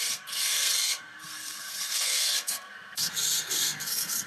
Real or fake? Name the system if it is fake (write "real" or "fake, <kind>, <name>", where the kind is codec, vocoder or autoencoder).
fake, codec, SNAC